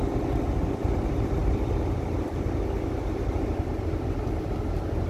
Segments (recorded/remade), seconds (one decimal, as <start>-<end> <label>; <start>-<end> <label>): 0.0-5.1 recorded